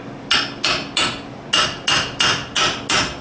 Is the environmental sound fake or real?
real